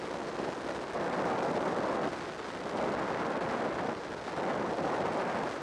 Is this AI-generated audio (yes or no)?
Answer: no